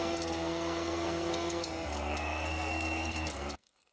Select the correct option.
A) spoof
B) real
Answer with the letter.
A